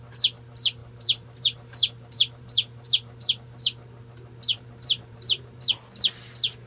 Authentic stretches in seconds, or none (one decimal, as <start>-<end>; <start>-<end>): 0.0-0.8; 3.6-4.5; 5.7-6.7